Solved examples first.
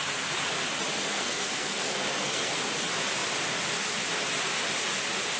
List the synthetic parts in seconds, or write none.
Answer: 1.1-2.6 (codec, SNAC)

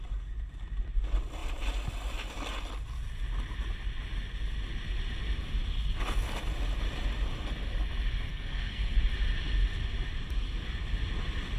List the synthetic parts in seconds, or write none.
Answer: 8.3-9.0 (codec, SNAC)

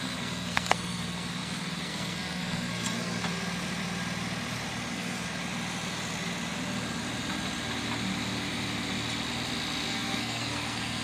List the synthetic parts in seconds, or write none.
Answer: 0.0-3.2 (codec, SNAC); 4.9-5.4; 9.9-11.0

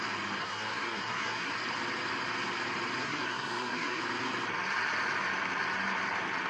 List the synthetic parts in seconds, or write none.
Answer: 0.4-1.5 (codec, SNAC); 3.0-4.0

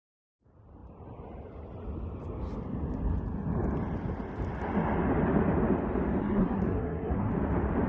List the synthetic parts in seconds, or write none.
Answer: 6.2-7.3 (codec, SNAC)